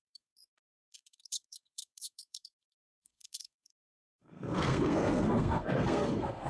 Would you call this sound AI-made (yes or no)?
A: yes